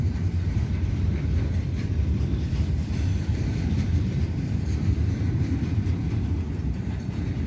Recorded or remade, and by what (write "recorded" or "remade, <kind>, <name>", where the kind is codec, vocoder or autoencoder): remade, vocoder, BigVGAN v2